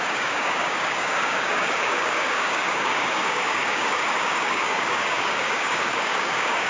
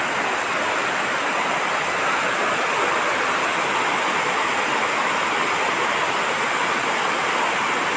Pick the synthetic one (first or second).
first